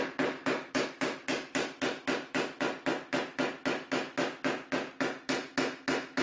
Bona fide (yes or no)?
yes